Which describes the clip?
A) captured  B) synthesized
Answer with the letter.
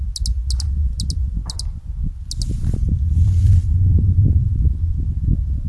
A